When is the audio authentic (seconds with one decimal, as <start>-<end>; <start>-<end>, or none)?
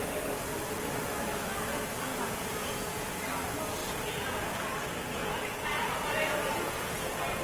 0.0-2.1; 3.2-3.8; 4.5-5.2